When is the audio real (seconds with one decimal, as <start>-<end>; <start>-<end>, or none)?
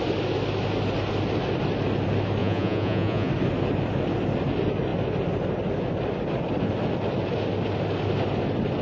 0.0-2.4; 3.3-8.8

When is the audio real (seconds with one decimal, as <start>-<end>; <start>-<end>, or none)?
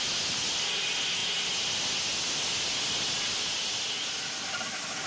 0.0-5.1